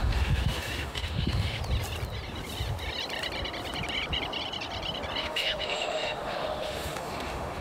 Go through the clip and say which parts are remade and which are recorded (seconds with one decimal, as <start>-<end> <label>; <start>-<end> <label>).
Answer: 0.0-1.6 remade; 1.6-5.2 recorded; 5.2-7.6 remade